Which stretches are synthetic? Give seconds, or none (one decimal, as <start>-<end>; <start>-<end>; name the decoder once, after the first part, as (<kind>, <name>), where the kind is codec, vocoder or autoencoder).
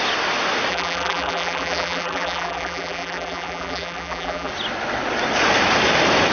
0.7-4.5 (vocoder, BigVGAN v2)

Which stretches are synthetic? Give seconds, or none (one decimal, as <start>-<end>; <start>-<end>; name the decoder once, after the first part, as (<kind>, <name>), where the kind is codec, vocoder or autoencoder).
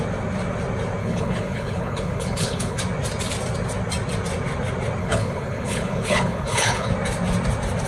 1.0-2.8 (codec, HILCodec); 5.0-6.9